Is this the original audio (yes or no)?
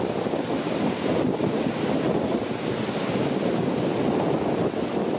yes